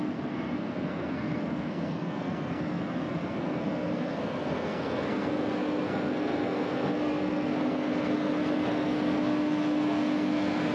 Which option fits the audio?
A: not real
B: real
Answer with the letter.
A